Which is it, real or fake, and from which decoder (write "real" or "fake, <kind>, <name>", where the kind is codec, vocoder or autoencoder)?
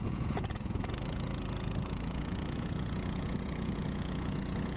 fake, vocoder, Vocos